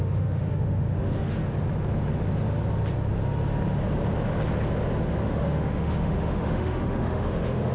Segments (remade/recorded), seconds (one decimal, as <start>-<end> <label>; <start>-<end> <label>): 0.0-1.4 remade; 1.4-5.2 recorded; 5.2-7.7 remade